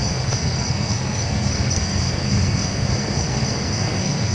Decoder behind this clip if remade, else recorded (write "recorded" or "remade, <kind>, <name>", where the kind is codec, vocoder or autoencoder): remade, codec, SNAC